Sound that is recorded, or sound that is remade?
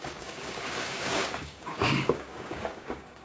remade